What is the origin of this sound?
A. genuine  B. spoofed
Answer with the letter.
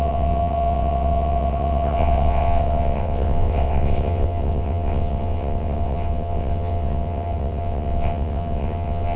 B